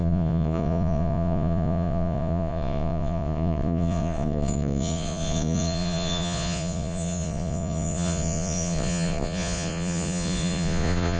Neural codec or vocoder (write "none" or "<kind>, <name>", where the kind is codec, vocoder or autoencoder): vocoder, Vocos